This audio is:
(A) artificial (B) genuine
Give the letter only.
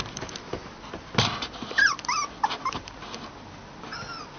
B